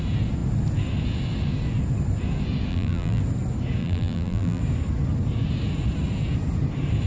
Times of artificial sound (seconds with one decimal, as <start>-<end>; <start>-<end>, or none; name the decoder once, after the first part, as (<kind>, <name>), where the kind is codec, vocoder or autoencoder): 2.7-3.2 (vocoder, BigVGAN v2); 3.8-4.6